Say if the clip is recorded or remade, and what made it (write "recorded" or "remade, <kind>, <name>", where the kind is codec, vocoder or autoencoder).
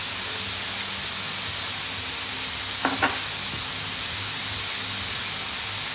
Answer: recorded